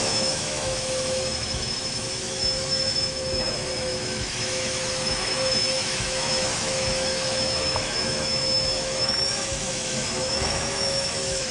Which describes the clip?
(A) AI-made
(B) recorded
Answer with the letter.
A